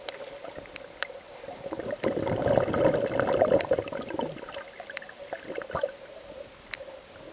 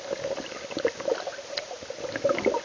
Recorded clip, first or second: first